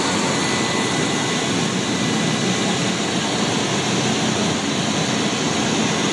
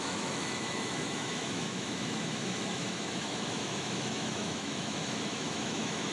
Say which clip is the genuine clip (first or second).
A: first